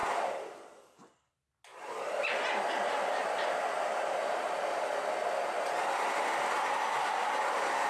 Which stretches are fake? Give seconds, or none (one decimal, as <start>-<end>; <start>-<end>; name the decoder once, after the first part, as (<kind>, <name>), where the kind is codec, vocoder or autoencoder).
0.0-0.8 (vocoder, BigVGAN v2); 1.7-2.4; 4.2-4.9